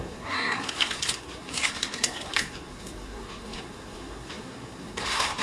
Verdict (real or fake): fake